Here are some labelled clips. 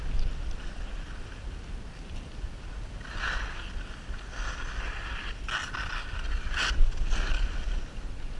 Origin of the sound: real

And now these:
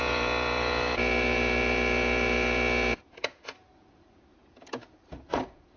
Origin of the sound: fake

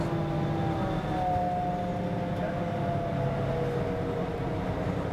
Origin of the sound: real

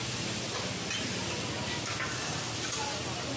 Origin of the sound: real